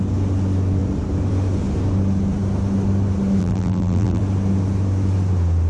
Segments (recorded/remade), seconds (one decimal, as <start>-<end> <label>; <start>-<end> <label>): 0.0-3.4 recorded; 3.4-4.2 remade; 4.2-5.7 recorded